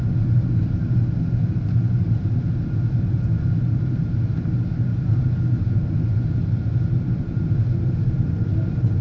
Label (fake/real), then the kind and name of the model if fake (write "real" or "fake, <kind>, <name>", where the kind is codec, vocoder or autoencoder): real